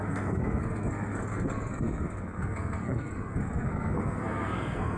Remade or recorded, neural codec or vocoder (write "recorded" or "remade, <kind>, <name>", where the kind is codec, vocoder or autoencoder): remade, codec, SNAC